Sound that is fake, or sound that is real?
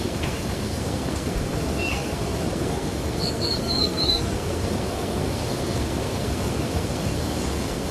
fake